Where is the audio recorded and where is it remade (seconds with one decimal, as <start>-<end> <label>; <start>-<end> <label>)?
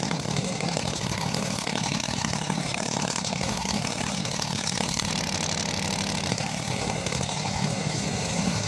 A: 0.0-5.1 remade; 5.1-6.3 recorded; 6.3-8.7 remade